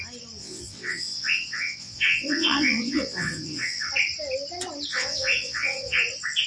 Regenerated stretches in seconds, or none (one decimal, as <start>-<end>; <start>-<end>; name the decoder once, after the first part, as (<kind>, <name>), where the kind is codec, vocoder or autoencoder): 0.4-3.9 (vocoder, WaveNeXt); 4.9-6.0